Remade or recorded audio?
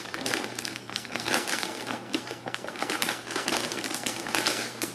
remade